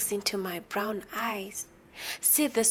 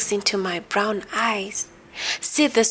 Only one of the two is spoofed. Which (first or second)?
first